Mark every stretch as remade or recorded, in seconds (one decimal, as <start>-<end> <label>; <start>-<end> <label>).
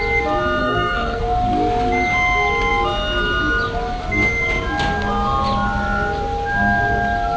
0.0-0.6 recorded; 0.6-1.2 remade; 1.2-7.4 recorded